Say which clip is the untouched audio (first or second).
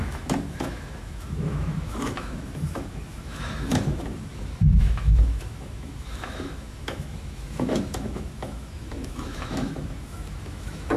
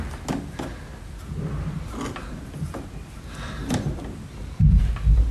second